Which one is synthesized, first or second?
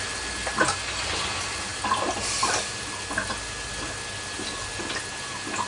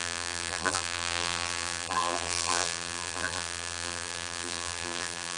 second